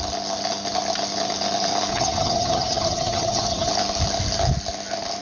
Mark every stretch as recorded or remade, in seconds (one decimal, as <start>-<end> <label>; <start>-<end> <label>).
0.0-1.9 recorded; 1.9-3.7 remade; 3.7-5.2 recorded